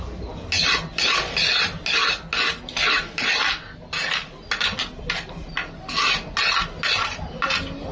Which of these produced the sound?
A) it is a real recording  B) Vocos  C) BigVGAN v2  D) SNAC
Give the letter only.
A